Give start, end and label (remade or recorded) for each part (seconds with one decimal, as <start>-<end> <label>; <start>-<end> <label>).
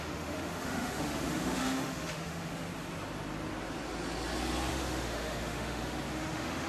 0.0-2.7 remade; 2.7-4.7 recorded; 4.7-6.7 remade